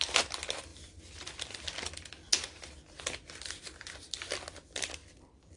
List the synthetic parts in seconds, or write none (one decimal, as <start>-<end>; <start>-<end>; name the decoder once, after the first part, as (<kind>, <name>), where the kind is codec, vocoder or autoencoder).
0.0-0.7 (vocoder, BigVGAN v2); 1.4-2.3; 4.2-5.6